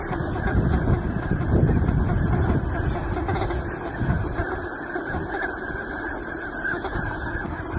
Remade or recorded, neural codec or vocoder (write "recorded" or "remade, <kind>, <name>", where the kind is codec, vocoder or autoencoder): recorded